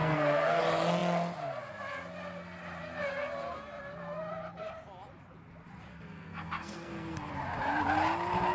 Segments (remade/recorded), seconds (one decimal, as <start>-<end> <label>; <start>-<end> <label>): 0.0-0.6 remade; 0.6-5.9 recorded; 5.9-7.3 remade; 7.3-8.5 recorded